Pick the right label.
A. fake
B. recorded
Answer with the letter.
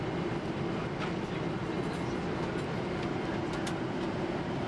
B